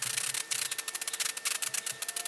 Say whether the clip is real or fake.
real